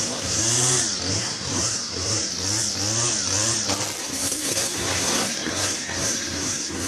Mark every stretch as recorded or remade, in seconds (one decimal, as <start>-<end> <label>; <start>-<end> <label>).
0.0-0.4 remade; 0.4-1.1 recorded; 1.1-2.3 remade; 2.3-4.0 recorded; 4.0-6.9 remade